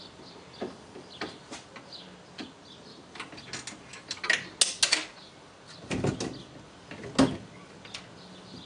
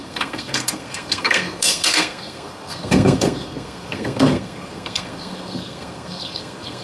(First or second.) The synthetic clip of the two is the second